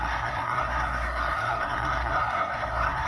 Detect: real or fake fake